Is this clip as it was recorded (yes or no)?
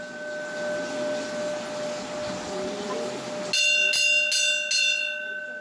yes